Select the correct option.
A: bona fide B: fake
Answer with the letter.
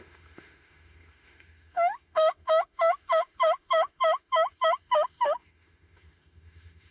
B